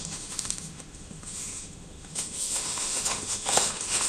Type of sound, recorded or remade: remade